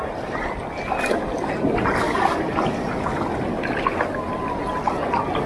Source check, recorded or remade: recorded